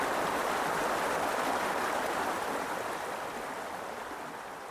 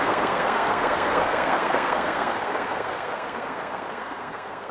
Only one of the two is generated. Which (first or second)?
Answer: second